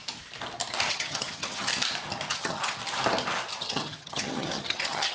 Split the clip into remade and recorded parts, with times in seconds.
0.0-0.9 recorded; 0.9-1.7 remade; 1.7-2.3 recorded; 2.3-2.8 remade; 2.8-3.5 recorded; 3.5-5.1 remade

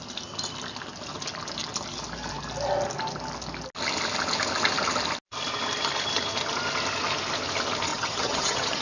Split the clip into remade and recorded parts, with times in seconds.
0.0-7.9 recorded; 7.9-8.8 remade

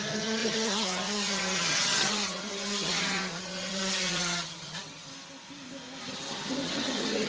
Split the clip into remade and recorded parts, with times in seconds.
0.0-5.1 remade; 5.1-6.1 recorded; 6.1-7.3 remade

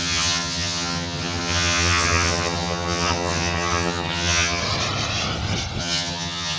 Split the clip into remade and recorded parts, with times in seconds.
0.0-4.6 remade; 4.6-5.8 recorded; 5.8-6.6 remade

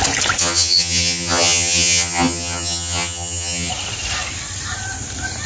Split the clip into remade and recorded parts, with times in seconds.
0.0-0.4 recorded; 0.4-3.7 remade; 3.7-5.5 recorded

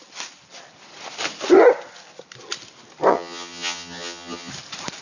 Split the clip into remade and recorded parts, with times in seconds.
0.0-3.1 recorded; 3.1-4.5 remade; 4.5-5.0 recorded

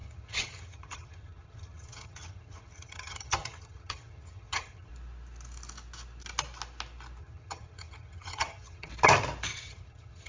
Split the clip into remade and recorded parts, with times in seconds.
0.0-4.9 remade; 4.9-7.2 recorded; 7.2-8.9 remade; 8.9-9.5 recorded; 9.5-10.3 remade